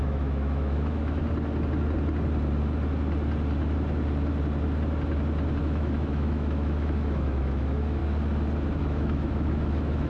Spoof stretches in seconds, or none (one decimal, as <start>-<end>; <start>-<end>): 0.0-1.2; 5.6-8.0; 8.8-10.1